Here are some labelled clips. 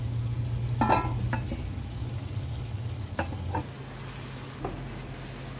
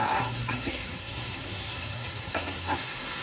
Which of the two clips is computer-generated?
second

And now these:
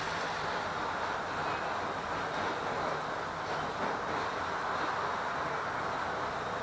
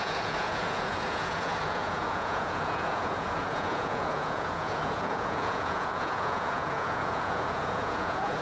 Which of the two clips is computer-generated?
second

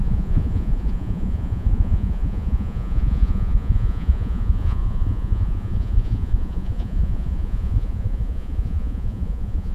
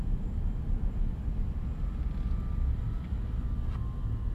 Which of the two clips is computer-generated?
first